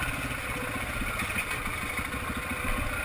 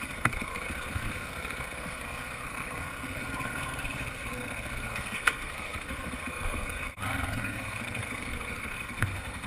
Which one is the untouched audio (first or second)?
first